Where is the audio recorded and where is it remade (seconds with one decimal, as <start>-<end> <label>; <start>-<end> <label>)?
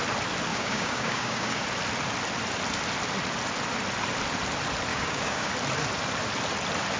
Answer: 0.0-0.5 recorded; 0.5-1.6 remade; 1.6-4.9 recorded; 4.9-5.5 remade; 5.5-7.0 recorded